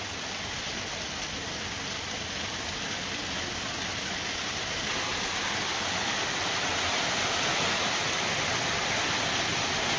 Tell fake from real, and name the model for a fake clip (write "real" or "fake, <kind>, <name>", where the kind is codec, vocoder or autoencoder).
real